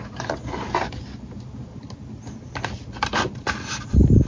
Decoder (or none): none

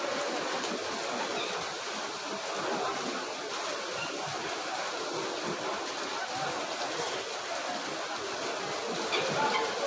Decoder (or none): none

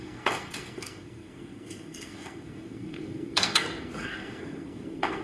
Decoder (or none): codec, SNAC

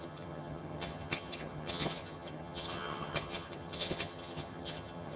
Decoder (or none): vocoder, HiFi-GAN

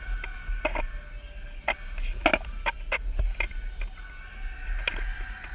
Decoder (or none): none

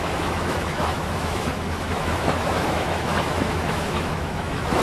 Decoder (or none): autoencoder, DAC-VAE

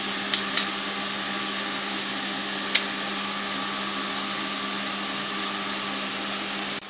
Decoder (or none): none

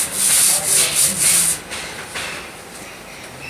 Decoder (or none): none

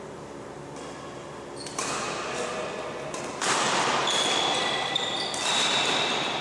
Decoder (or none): none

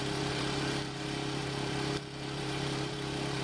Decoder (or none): vocoder, BigVGAN v2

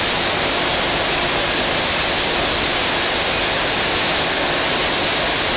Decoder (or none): none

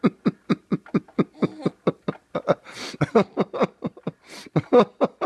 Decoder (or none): none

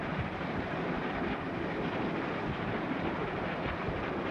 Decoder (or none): vocoder, BigVGAN v2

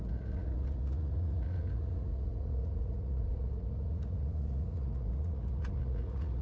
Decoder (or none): vocoder, Vocos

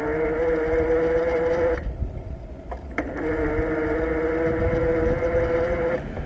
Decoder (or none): none